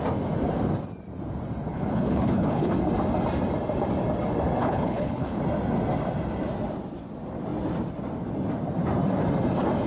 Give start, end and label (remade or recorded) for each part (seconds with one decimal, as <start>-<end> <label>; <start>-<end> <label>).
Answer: 0.0-1.7 recorded; 1.7-2.7 remade; 2.7-4.6 recorded; 4.6-5.4 remade; 5.4-9.9 recorded